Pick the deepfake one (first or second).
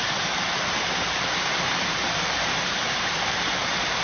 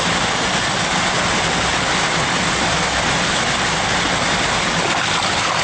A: first